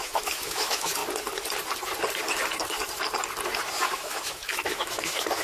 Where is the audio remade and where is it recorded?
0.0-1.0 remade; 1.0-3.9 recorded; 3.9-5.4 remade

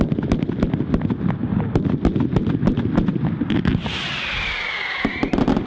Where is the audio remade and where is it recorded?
0.0-5.7 recorded

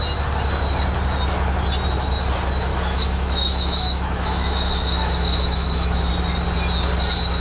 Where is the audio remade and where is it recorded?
0.0-2.7 recorded; 2.7-6.1 remade; 6.1-7.4 recorded